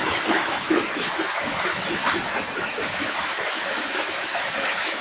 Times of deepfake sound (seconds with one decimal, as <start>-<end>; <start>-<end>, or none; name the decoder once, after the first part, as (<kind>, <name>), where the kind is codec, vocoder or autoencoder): 0.0-2.0 (autoencoder, DAC-VAE); 2.6-5.0